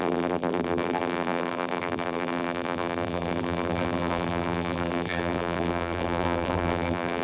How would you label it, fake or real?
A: fake